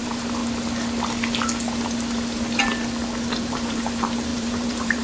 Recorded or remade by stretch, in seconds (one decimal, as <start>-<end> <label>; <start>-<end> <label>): 0.0-0.4 remade; 0.4-3.3 recorded; 3.3-5.0 remade